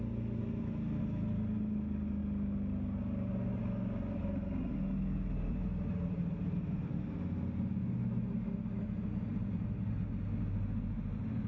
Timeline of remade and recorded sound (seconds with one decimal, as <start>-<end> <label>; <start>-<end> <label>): 0.0-5.5 recorded; 5.5-7.0 remade; 7.0-9.3 recorded; 9.3-9.9 remade; 9.9-11.5 recorded